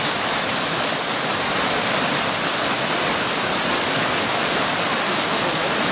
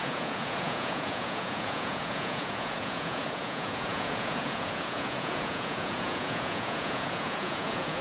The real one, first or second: first